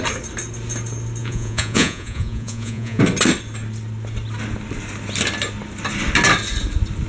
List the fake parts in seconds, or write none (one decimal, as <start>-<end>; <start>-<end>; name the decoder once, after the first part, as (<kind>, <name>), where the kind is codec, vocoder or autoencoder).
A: 1.2-3.0 (vocoder, Vocos)